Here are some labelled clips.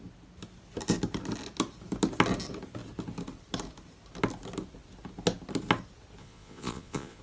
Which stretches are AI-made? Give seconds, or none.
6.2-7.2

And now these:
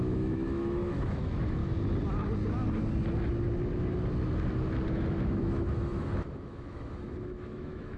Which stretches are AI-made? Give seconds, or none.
0.0-1.6; 4.9-8.0

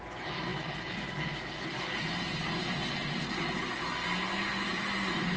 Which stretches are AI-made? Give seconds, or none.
none